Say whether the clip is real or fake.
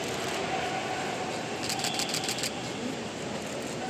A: real